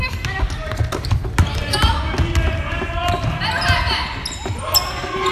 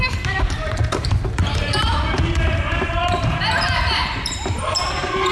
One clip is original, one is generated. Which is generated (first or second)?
second